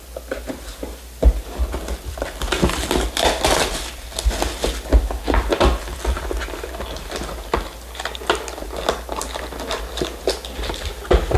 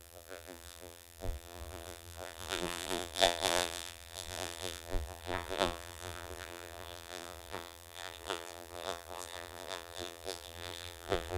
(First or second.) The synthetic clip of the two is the second